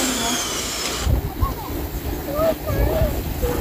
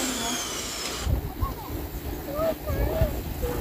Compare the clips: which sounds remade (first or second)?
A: first